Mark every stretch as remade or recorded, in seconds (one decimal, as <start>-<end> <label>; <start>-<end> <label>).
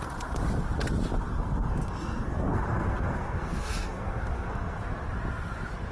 0.0-1.3 recorded; 1.3-4.8 remade; 4.8-5.9 recorded